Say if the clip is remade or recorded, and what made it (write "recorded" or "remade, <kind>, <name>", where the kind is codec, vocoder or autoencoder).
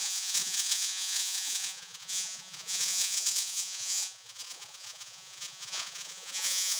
remade, vocoder, Vocos